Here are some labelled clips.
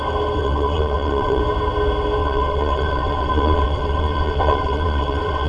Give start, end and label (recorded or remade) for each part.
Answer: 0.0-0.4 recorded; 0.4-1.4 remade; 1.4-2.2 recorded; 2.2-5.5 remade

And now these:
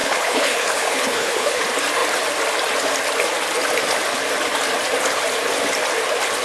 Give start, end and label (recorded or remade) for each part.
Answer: 0.0-1.6 remade; 1.6-6.4 recorded

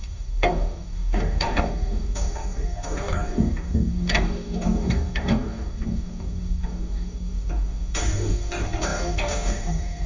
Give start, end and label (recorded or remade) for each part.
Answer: 0.0-10.1 remade

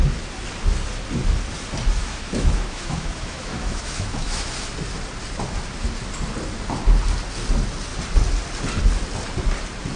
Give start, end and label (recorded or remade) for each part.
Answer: 0.0-2.0 recorded; 2.0-4.5 remade; 4.5-10.0 recorded

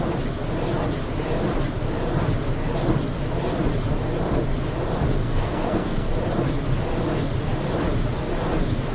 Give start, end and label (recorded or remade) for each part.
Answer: 0.0-5.2 recorded; 5.2-6.1 remade; 6.1-8.9 recorded

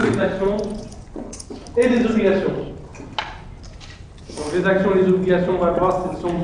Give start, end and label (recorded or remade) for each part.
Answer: 0.0-1.5 remade; 1.5-6.4 recorded

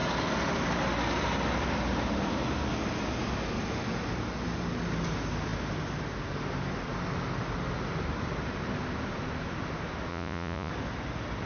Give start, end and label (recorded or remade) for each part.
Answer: 0.0-10.1 recorded; 10.1-10.7 remade; 10.7-11.5 recorded